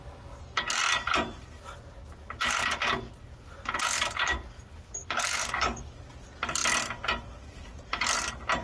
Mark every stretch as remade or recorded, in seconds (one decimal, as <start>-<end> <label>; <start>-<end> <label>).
0.0-0.8 remade; 0.8-5.0 recorded; 5.0-5.9 remade; 5.9-8.6 recorded

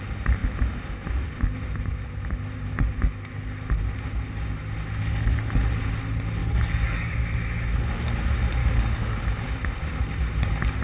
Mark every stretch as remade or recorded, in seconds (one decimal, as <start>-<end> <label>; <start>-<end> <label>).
0.0-6.4 recorded; 6.4-7.1 remade; 7.1-8.6 recorded; 8.6-9.2 remade; 9.2-10.8 recorded